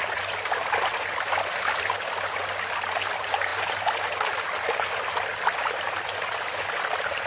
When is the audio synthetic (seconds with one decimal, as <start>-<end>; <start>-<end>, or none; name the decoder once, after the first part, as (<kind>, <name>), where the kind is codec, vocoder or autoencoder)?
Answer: none

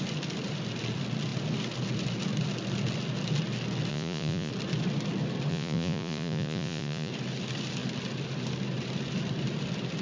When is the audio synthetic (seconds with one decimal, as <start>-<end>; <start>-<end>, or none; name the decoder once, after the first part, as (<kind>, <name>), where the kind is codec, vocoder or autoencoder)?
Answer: 3.9-4.5 (vocoder, Vocos); 5.5-7.1

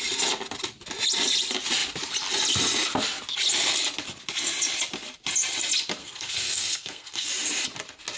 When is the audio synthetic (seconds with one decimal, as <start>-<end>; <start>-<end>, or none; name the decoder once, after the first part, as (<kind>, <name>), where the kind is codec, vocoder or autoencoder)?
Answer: 6.0-7.3 (codec, SNAC)

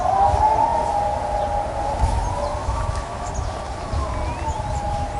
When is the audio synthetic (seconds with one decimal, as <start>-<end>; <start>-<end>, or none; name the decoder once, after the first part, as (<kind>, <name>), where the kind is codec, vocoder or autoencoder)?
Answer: 2.6-3.3 (autoencoder, DAC-VAE)

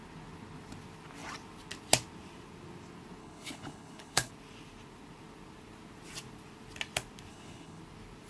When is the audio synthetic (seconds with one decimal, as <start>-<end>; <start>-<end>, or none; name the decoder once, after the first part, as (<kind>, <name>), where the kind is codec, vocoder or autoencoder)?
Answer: 3.2-4.3 (codec, HILCodec); 7.3-7.8

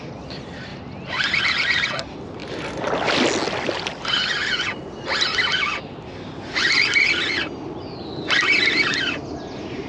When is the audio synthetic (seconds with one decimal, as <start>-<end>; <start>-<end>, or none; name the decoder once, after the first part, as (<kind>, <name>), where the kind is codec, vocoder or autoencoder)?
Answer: none

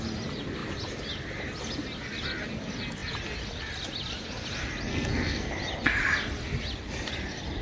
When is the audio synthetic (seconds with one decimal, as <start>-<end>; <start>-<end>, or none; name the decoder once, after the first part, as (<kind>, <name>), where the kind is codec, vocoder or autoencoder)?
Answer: 4.9-5.5 (codec, SNAC)